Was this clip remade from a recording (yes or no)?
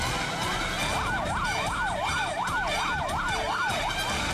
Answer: no